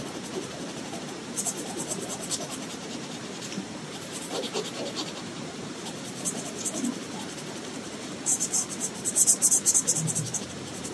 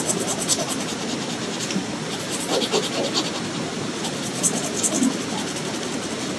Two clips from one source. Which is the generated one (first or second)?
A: first